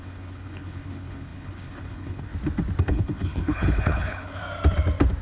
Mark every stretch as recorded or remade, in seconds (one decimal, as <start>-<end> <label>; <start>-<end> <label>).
0.0-2.3 remade; 2.3-2.8 recorded; 2.8-4.4 remade; 4.4-5.2 recorded